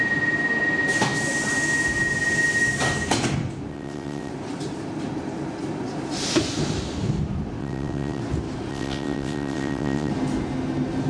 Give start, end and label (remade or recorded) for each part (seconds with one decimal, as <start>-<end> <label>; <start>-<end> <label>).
0.0-3.7 recorded; 3.7-4.3 remade; 4.3-7.6 recorded; 7.6-8.2 remade; 8.2-8.7 recorded; 8.7-10.1 remade; 10.1-11.1 recorded

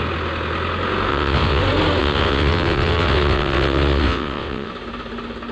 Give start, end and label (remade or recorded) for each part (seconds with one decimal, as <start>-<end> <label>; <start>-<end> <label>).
0.0-1.1 recorded; 1.1-1.6 remade; 1.6-2.0 recorded; 2.0-4.7 remade; 4.7-5.5 recorded

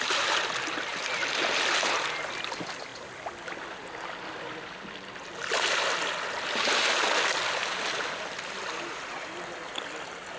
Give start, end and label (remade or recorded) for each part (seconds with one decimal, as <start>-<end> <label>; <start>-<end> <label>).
0.0-10.4 recorded

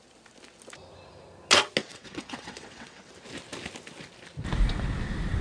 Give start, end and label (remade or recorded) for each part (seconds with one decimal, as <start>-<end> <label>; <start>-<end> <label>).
0.0-1.8 recorded; 1.8-3.1 remade; 3.1-5.4 recorded

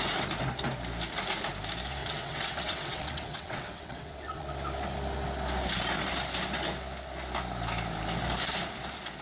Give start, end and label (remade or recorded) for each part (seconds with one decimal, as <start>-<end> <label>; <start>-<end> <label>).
0.0-2.0 recorded; 2.0-4.5 remade; 4.5-9.2 recorded

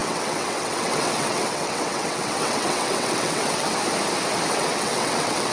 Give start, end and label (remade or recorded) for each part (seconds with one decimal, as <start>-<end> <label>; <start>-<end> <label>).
0.0-3.8 remade; 3.8-4.5 recorded; 4.5-5.5 remade

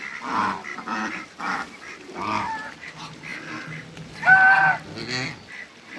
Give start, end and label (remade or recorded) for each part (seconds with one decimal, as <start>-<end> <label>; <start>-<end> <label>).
0.0-6.0 recorded